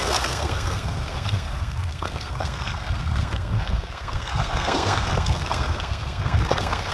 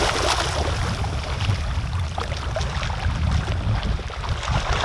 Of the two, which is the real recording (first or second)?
second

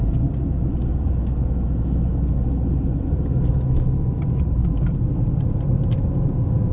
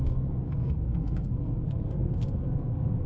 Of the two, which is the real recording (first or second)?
first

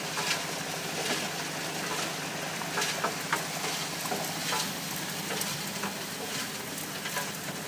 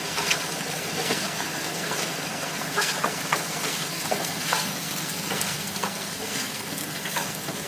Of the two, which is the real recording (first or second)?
first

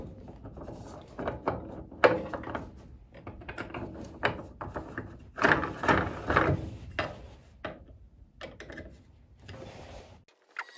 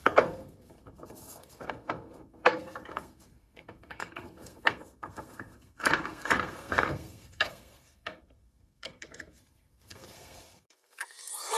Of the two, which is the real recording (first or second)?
first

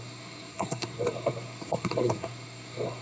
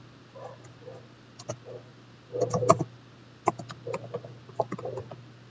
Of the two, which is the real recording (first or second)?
second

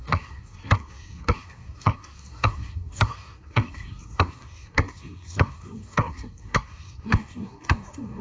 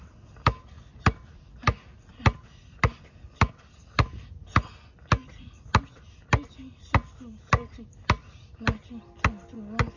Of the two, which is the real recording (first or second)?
second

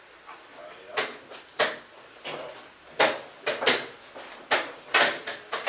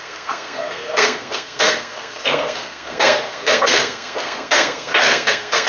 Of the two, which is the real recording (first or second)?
first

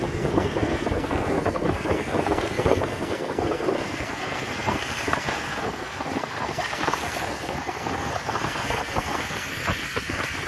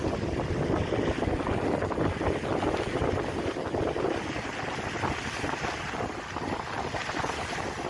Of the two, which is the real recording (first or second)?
second